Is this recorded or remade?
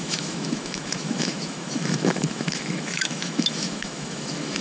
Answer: remade